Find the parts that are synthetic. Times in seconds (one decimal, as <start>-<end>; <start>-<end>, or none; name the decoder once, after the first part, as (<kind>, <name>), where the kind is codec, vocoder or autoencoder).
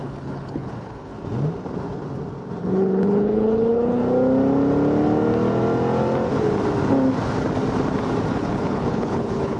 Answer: 0.0-1.1 (codec, HILCodec); 2.6-4.0; 8.3-9.6